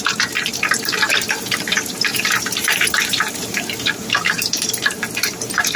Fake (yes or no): yes